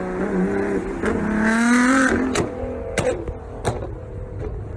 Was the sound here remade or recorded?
recorded